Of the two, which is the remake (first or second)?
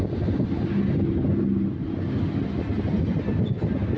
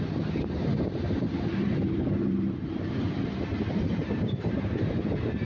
second